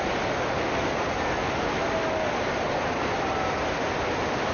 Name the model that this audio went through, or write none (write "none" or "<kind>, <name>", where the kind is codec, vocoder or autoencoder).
none